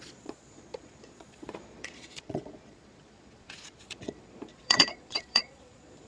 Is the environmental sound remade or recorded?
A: remade